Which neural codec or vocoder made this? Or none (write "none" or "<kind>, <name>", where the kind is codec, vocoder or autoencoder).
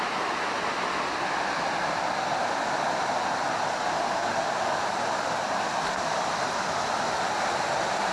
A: none